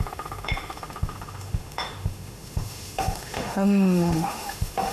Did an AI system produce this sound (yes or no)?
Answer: yes